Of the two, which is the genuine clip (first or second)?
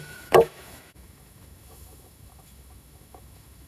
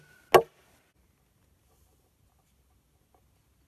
second